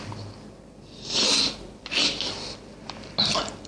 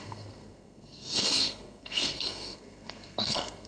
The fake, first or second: second